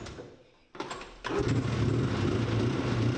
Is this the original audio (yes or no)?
yes